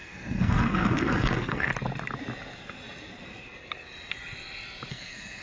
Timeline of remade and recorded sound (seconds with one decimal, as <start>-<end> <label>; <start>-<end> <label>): 0.0-1.7 remade; 1.7-4.9 recorded; 4.9-5.4 remade